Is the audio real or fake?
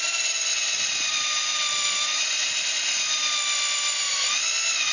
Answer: real